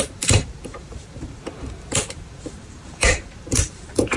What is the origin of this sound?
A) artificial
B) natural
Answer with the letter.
A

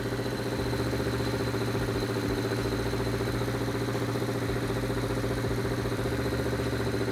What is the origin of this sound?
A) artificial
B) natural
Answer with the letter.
B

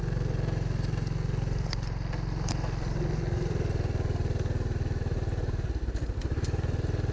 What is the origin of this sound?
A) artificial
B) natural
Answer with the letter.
B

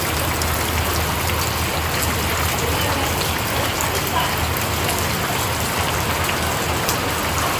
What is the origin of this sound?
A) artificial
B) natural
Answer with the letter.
B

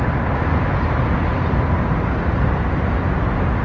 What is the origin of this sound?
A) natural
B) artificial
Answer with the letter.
A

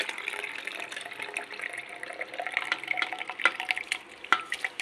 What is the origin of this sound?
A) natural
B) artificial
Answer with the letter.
A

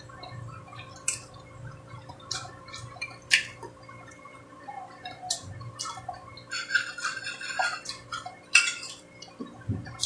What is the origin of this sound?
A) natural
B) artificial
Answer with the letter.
B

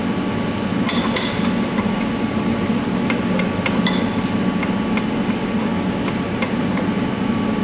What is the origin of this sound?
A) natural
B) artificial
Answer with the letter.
A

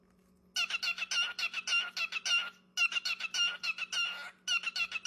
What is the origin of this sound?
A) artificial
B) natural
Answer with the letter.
B